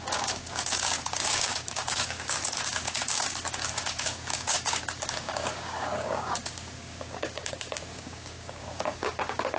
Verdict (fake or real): fake